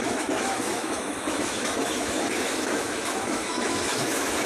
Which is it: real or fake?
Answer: fake